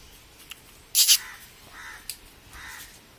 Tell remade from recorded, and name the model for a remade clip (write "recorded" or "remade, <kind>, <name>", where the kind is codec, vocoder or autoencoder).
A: recorded